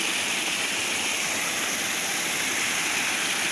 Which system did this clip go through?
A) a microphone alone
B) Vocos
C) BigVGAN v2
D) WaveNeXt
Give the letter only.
A